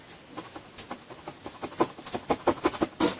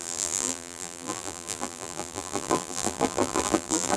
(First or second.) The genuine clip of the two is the first